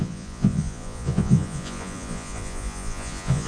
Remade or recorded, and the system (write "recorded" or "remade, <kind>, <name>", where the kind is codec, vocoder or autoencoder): remade, vocoder, Vocos